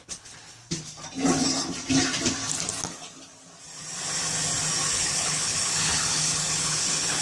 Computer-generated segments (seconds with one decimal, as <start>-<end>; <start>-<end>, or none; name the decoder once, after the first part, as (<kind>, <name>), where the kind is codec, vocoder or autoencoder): 0.0-0.6 (codec, HILCodec); 4.9-7.2